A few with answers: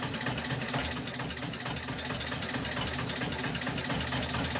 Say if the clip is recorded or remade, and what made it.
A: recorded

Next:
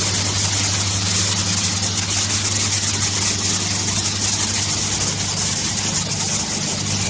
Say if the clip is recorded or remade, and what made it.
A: recorded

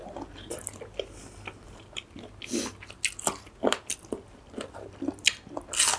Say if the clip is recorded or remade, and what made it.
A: recorded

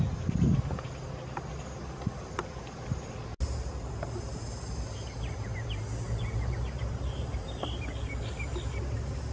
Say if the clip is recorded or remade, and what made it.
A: recorded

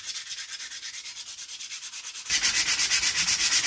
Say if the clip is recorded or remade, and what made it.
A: recorded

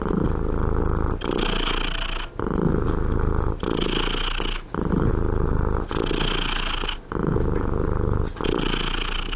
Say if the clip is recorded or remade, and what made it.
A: recorded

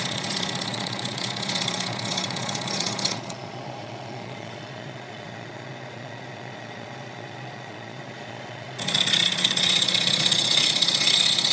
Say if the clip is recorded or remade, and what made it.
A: remade, vocoder, Vocos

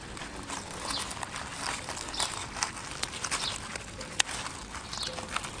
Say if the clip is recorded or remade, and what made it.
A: recorded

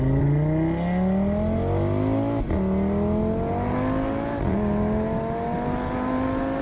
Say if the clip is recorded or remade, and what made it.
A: recorded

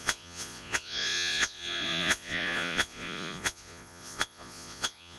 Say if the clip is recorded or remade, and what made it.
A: remade, vocoder, Vocos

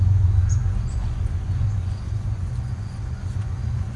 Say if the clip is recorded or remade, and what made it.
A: remade, vocoder, Vocos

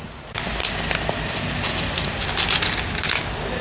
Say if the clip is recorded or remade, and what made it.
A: recorded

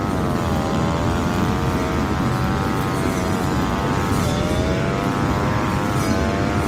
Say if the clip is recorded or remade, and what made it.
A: recorded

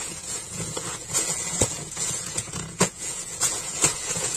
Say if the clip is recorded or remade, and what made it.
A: remade, vocoder, Vocos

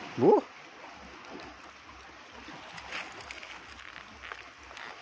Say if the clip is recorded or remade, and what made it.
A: recorded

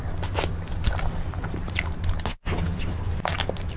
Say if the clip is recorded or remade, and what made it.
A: recorded